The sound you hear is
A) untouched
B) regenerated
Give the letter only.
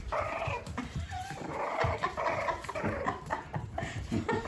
B